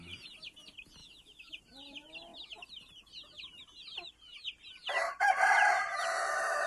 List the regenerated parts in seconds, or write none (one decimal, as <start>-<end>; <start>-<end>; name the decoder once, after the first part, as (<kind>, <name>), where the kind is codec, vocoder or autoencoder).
1.0-1.6 (autoencoder, DAC-VAE)